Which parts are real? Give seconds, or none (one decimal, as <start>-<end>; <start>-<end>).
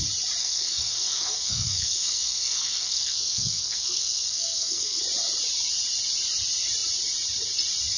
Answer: 0.0-0.4; 5.0-8.0